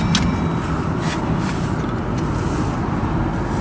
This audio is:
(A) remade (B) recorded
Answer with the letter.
B